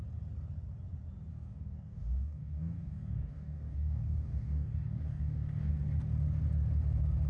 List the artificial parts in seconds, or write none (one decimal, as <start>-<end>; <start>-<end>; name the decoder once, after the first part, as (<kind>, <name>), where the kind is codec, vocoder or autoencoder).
1.3-5.7 (codec, DAC)